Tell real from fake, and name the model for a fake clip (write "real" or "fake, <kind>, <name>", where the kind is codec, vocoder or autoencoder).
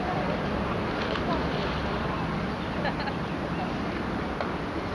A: real